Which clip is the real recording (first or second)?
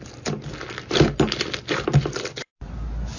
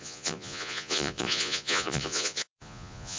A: first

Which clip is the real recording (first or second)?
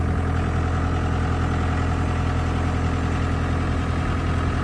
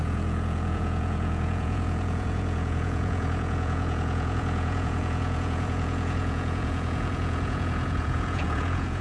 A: first